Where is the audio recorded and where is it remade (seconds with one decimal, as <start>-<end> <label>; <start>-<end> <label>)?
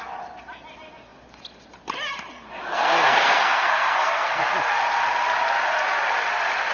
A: 0.0-2.7 recorded; 2.7-4.5 remade; 4.5-6.7 recorded